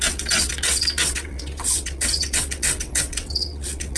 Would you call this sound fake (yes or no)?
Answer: yes